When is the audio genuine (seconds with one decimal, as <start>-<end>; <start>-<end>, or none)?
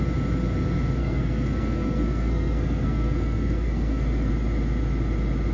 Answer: 0.0-1.0; 4.3-5.5